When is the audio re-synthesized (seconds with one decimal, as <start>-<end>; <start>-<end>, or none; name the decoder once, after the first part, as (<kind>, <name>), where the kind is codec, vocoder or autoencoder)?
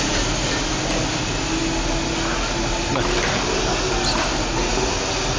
none